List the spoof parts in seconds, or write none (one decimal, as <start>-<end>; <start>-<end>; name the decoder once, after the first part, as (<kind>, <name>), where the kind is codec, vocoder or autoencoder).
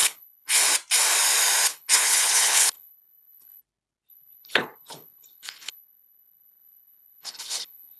0.0-0.6 (codec, HILCodec); 1.7-3.6; 4.1-8.0